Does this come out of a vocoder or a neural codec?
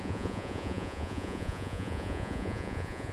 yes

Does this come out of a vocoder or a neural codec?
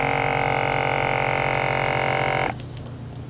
no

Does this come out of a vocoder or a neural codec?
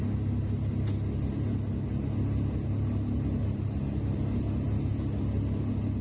no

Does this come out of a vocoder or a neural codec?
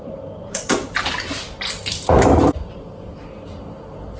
no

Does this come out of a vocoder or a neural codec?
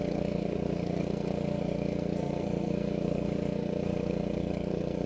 yes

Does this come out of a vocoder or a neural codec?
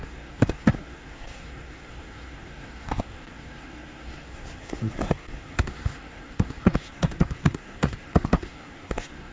yes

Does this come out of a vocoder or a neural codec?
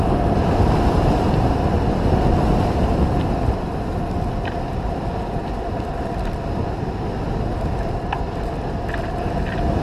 no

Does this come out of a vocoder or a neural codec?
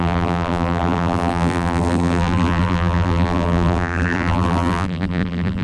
yes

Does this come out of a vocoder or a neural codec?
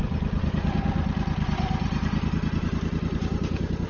no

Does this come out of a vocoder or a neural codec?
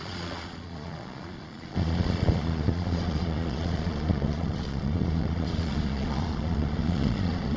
yes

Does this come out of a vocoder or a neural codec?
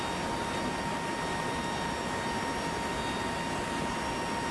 no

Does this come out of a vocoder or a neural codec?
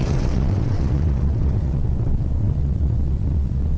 yes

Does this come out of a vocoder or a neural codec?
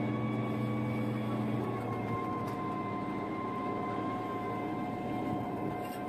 no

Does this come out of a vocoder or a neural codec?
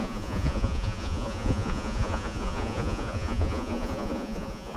yes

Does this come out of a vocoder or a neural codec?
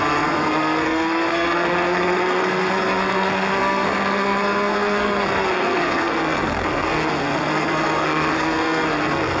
yes